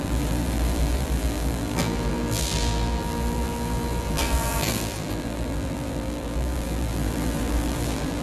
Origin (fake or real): fake